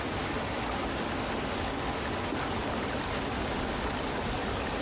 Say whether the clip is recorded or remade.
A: recorded